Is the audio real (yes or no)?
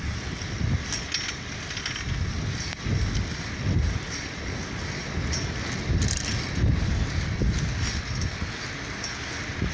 yes